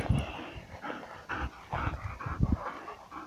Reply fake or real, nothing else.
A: real